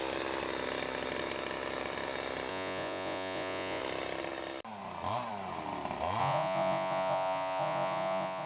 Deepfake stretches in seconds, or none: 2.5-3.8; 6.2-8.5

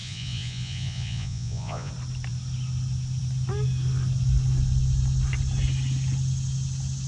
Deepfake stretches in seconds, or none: 0.0-1.9

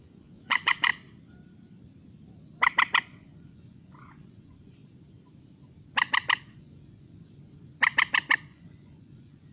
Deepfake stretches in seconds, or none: 0.0-0.9; 3.0-4.8; 6.4-7.7; 8.4-9.5